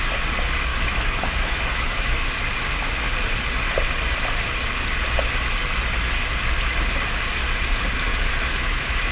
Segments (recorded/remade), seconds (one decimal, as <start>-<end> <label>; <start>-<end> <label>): 0.0-0.7 recorded; 0.7-2.3 remade; 2.3-8.1 recorded; 8.1-9.1 remade